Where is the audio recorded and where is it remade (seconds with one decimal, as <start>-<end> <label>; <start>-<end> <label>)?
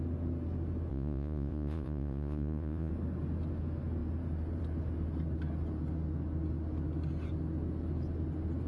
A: 0.0-0.9 recorded; 0.9-2.9 remade; 2.9-8.7 recorded